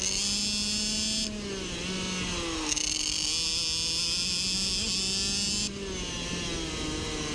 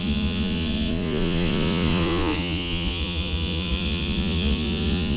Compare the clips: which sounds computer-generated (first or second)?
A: second